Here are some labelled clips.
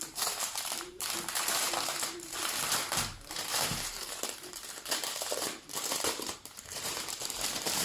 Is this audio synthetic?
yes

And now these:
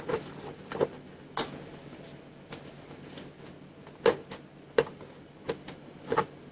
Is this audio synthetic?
no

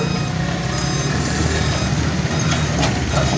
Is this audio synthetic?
no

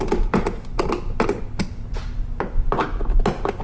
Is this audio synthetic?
no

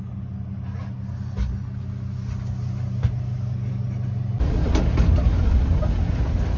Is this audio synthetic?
no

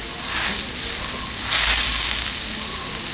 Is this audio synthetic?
no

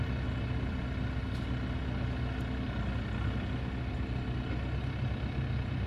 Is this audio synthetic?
no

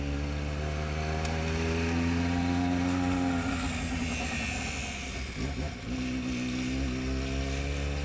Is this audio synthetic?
no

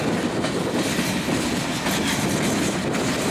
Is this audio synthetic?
no